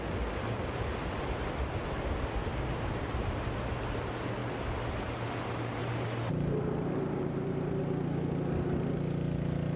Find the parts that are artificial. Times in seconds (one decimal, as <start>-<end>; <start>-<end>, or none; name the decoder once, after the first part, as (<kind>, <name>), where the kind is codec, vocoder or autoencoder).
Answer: 2.4-3.5 (vocoder, BigVGAN v2); 5.8-7.8